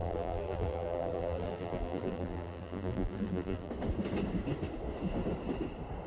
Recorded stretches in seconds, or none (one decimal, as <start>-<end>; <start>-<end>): 3.7-6.1